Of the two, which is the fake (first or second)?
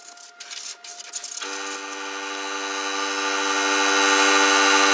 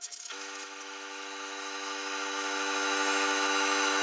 second